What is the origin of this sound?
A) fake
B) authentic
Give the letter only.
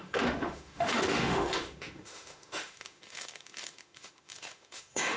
A